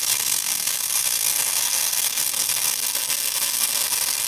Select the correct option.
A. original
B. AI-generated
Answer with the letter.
B